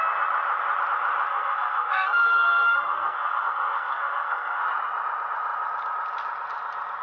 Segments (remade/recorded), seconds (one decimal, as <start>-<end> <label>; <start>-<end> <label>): 0.0-1.3 recorded; 1.3-4.6 remade; 4.6-7.0 recorded